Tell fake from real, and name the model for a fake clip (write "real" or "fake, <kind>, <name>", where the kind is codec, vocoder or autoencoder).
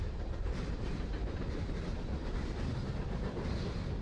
fake, vocoder, BigVGAN v2